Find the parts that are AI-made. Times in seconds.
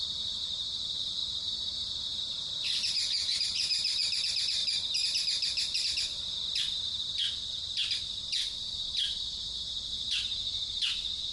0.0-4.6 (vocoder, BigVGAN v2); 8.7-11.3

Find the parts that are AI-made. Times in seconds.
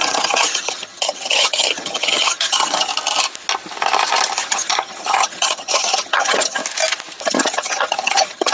0.0-2.9 (vocoder, HiFi-GAN); 4.4-6.6; 7.2-8.5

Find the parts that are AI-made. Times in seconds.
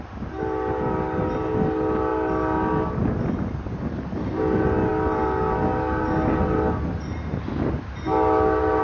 none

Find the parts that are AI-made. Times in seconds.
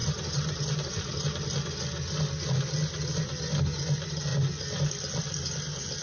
0.0-1.1 (vocoder, BigVGAN v2)